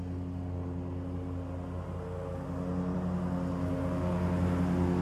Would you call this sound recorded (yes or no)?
yes